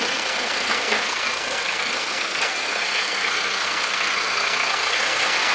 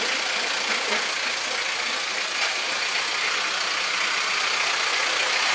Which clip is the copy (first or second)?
first